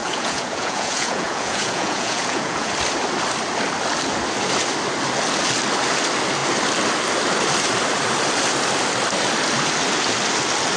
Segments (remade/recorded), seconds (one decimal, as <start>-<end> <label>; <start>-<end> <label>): 0.0-2.7 remade; 2.7-10.8 recorded